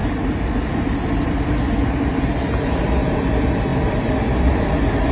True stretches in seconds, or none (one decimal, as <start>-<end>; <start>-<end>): 0.0-5.1